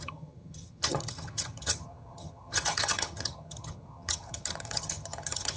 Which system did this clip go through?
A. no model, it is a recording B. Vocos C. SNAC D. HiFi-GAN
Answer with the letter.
D